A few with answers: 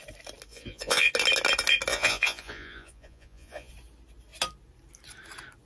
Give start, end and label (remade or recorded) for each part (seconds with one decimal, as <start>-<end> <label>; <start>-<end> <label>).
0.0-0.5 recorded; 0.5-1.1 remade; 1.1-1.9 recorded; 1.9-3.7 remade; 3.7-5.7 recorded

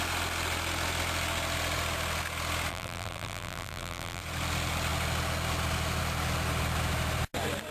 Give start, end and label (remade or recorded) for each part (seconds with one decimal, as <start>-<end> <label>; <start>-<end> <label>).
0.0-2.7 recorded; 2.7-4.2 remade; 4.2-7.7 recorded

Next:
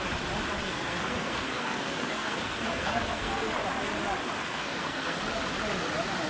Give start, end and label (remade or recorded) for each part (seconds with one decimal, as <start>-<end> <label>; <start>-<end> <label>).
0.0-0.6 recorded; 0.6-3.5 remade; 3.5-4.4 recorded; 4.4-5.2 remade; 5.2-6.3 recorded

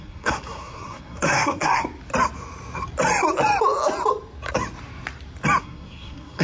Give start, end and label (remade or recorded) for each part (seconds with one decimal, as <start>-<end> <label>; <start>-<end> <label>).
0.0-1.8 remade; 1.8-5.6 recorded; 5.6-6.4 remade

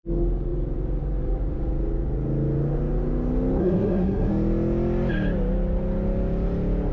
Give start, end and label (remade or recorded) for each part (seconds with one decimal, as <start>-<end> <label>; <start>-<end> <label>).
0.0-3.6 recorded; 3.6-4.3 remade; 4.3-6.9 recorded